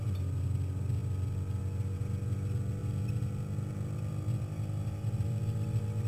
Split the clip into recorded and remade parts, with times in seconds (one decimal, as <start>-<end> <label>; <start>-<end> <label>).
0.0-6.1 recorded